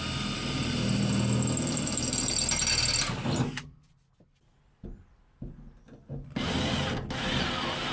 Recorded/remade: recorded